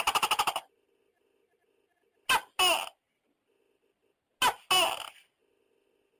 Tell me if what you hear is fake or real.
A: real